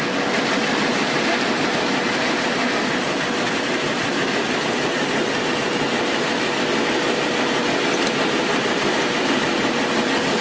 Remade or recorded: recorded